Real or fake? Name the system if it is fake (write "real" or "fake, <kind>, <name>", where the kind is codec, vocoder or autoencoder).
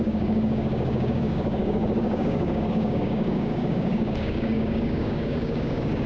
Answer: fake, codec, DAC